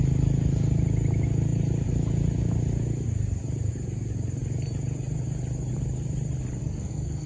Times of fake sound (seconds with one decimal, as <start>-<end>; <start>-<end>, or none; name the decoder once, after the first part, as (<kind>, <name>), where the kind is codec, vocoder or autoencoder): 6.6-7.3 (codec, SNAC)